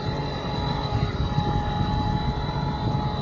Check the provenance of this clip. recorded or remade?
recorded